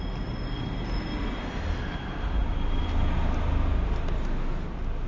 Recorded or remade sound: recorded